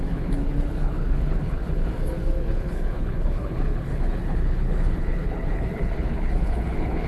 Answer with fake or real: fake